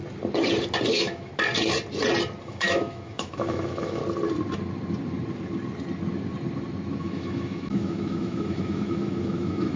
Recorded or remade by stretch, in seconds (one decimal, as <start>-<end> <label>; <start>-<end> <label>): 0.0-0.9 recorded; 0.9-1.3 remade; 1.3-2.4 recorded; 2.4-4.0 remade; 4.0-7.0 recorded; 7.0-9.8 remade